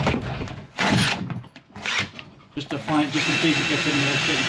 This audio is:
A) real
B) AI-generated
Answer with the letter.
B